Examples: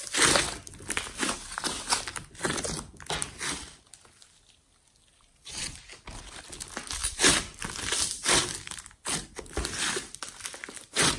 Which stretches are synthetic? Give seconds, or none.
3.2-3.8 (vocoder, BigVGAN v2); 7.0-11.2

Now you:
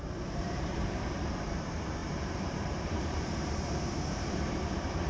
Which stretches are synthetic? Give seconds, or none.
0.0-5.1 (vocoder, BigVGAN v2)